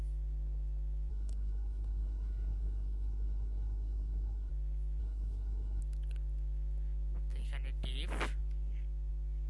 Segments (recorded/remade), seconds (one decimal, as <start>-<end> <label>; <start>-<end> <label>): 0.0-1.1 recorded; 1.1-4.5 remade; 4.5-5.0 recorded; 5.0-5.8 remade; 5.8-9.5 recorded